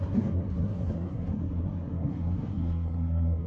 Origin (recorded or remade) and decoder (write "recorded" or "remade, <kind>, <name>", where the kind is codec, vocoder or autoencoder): remade, codec, SNAC